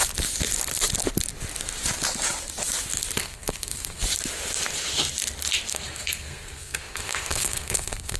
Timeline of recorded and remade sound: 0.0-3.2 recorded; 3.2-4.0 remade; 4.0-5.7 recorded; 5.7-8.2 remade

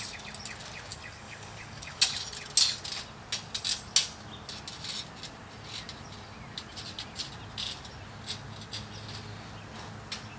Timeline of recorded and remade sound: 0.0-0.9 recorded; 0.9-2.0 remade; 2.0-10.4 recorded

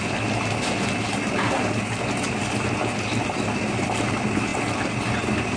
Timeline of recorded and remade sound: 0.0-5.6 recorded

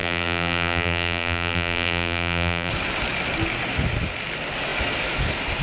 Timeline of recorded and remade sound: 0.0-2.7 remade; 2.7-5.6 recorded

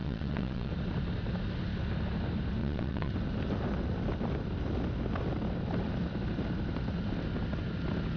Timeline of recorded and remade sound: 0.0-0.7 remade; 0.7-2.6 recorded; 2.6-3.1 remade; 3.1-8.2 recorded